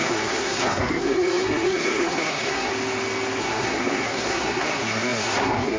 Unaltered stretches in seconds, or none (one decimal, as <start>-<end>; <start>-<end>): 2.7-3.4